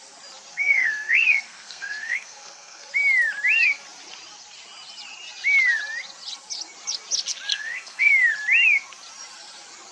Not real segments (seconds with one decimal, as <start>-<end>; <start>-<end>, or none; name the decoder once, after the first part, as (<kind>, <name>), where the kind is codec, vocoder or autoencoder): 0.5-2.9 (codec, SNAC); 7.5-8.1